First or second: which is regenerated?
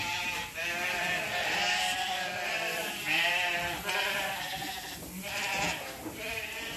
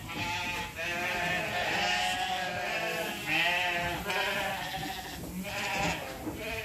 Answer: first